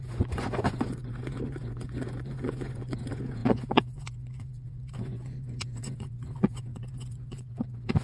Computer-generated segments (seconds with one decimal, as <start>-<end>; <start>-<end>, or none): 0.0-8.0